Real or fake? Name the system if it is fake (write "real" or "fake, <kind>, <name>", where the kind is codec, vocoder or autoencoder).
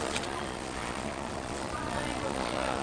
fake, vocoder, Vocos